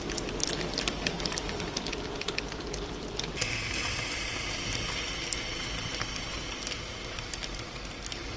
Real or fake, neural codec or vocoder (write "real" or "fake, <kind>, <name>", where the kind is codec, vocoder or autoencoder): real